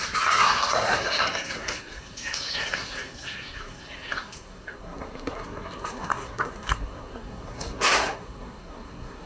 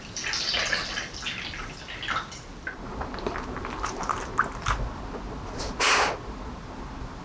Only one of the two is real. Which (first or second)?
second